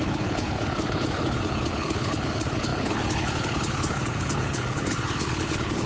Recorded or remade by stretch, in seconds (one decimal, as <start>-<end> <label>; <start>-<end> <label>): 0.0-5.9 remade

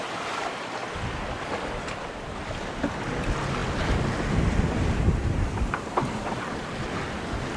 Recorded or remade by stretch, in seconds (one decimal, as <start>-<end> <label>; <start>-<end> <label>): 0.0-7.6 recorded

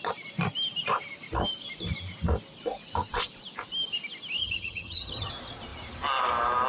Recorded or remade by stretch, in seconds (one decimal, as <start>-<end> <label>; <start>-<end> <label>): 0.0-4.4 recorded; 4.4-5.3 remade; 5.3-6.7 recorded

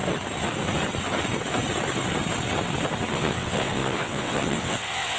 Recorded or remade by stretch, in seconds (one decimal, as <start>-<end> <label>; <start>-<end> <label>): 0.0-3.1 recorded; 3.1-5.2 remade